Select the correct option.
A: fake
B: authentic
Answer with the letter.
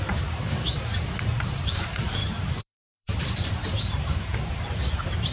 A